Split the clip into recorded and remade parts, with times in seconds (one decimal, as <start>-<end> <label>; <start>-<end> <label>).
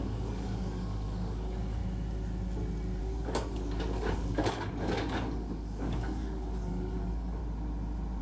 0.0-1.8 remade; 1.8-3.0 recorded; 3.0-7.4 remade; 7.4-8.2 recorded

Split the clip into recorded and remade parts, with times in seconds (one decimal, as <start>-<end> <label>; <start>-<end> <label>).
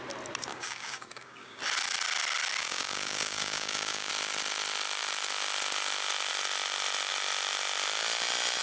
0.0-0.5 recorded; 0.5-1.6 remade; 1.6-2.6 recorded; 2.6-4.1 remade; 4.1-8.6 recorded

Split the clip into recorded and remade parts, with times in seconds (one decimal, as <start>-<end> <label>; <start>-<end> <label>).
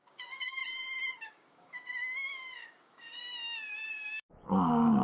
0.0-0.6 remade; 0.6-1.2 recorded; 1.2-3.2 remade; 3.2-3.9 recorded; 3.9-5.0 remade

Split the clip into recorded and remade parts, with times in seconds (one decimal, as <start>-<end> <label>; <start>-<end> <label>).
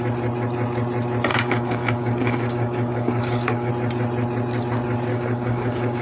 0.0-1.3 recorded; 1.3-3.7 remade; 3.7-5.1 recorded; 5.1-6.0 remade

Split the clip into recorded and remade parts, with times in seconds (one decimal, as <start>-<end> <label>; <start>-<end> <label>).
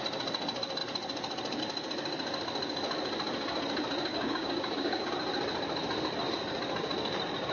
0.0-4.1 recorded; 4.1-5.1 remade; 5.1-7.5 recorded